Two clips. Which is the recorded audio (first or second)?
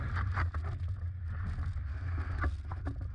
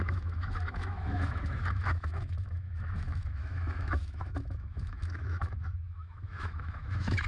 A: first